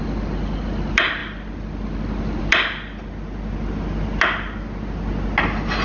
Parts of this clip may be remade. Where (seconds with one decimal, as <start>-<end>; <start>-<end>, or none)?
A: none